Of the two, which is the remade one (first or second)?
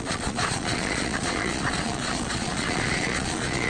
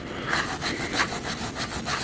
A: first